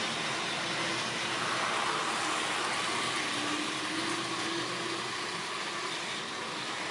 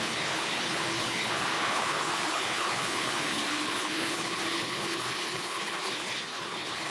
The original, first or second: first